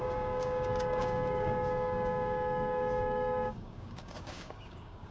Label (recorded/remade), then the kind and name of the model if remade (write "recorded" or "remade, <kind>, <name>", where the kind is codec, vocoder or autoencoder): remade, codec, DAC